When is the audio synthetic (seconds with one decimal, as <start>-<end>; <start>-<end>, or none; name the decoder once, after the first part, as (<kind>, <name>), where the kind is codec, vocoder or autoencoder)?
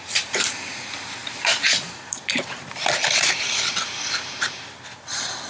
1.2-2.7 (vocoder, BigVGAN v2)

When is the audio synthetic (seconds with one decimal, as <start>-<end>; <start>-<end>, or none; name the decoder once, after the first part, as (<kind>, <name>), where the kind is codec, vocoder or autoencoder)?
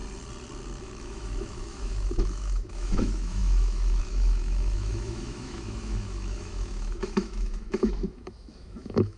0.8-9.2 (autoencoder, DAC-VAE)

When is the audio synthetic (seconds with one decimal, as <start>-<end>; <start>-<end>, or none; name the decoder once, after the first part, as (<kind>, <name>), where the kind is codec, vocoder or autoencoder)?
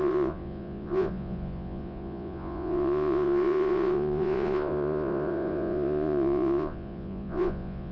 0.0-7.9 (vocoder, Vocos)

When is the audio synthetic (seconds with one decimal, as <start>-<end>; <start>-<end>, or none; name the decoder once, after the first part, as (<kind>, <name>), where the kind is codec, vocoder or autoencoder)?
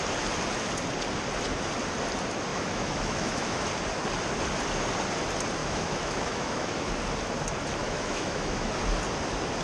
2.5-3.7 (autoencoder, DAC-VAE); 5.6-6.9; 7.8-8.7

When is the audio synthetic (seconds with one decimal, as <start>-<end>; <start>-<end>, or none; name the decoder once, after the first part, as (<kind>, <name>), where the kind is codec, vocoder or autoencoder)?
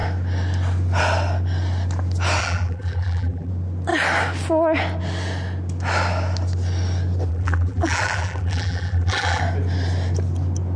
2.4-3.5 (vocoder, BigVGAN v2); 7.3-9.4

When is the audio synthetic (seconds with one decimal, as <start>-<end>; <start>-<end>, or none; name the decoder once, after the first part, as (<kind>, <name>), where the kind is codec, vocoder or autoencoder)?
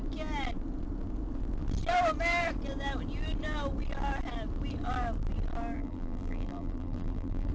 5.8-7.5 (vocoder, BigVGAN v2)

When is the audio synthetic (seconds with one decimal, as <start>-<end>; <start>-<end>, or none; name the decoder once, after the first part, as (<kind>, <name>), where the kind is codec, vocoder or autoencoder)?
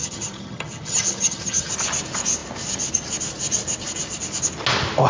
0.0-1.7 (vocoder, HiFi-GAN)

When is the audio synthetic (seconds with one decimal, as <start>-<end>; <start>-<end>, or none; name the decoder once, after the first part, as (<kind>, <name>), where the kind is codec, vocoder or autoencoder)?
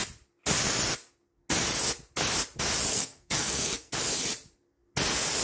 2.9-3.9 (codec, SNAC)